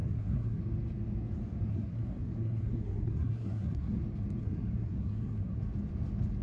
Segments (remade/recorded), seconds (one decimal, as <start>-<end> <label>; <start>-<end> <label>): 0.0-0.6 remade; 0.6-1.7 recorded; 1.7-4.0 remade; 4.0-4.4 recorded; 4.4-5.6 remade; 5.6-6.4 recorded